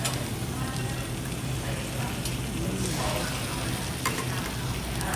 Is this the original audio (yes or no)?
yes